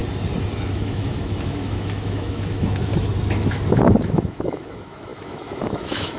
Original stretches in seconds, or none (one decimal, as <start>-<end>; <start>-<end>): 0.0-0.7; 2.9-3.7